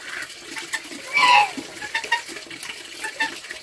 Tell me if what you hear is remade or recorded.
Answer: recorded